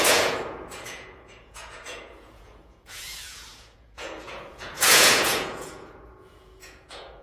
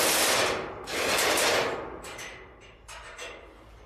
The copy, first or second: first